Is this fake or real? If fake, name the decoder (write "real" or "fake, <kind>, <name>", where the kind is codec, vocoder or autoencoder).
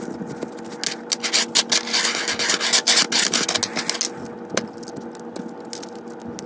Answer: real